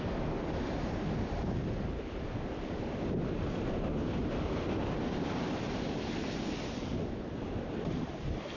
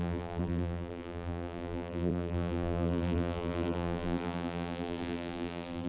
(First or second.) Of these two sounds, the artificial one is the second